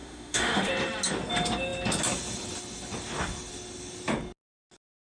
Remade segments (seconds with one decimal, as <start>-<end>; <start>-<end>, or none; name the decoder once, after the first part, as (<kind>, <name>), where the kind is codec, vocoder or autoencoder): 0.0-0.7 (autoencoder, DAC-VAE)